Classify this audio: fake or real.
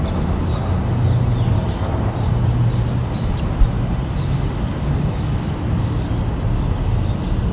real